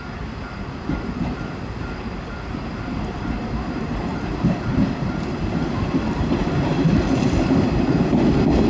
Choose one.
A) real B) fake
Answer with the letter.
B